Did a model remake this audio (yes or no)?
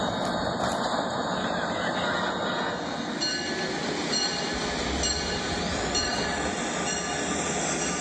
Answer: no